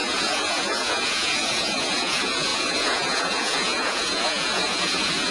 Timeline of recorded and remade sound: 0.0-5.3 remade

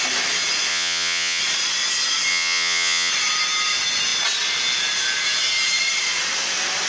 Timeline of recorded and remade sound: 0.0-0.7 recorded; 0.7-1.4 remade; 1.4-2.3 recorded; 2.3-3.1 remade; 3.1-6.9 recorded

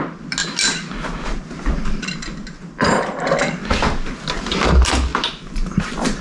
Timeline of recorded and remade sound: 0.0-5.1 recorded; 5.1-6.2 remade

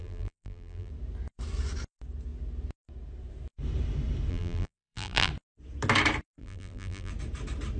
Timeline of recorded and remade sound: 0.0-0.9 remade; 0.9-4.3 recorded; 4.3-5.3 remade; 5.3-6.4 recorded; 6.4-7.1 remade; 7.1-7.8 recorded

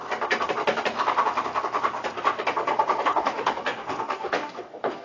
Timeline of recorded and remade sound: 0.0-3.0 recorded; 3.0-5.0 remade

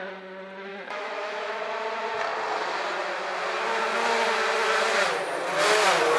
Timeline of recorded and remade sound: 0.0-0.7 recorded; 0.7-1.6 remade; 1.6-6.2 recorded